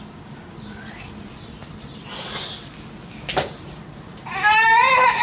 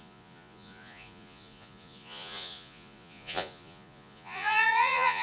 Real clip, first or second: first